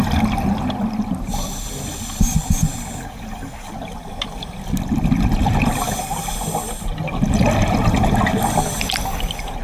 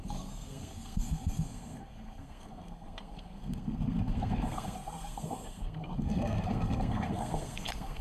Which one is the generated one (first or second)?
second